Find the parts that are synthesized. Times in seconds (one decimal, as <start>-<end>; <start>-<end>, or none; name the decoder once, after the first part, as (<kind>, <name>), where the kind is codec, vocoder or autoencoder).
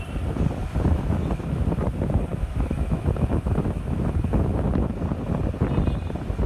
0.6-1.6 (autoencoder, DAC-VAE); 2.3-4.7